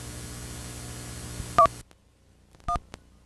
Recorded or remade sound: recorded